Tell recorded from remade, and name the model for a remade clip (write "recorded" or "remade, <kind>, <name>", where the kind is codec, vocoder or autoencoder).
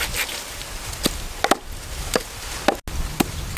recorded